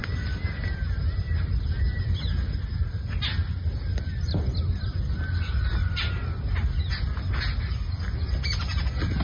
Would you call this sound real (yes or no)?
yes